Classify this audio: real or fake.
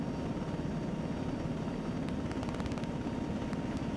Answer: real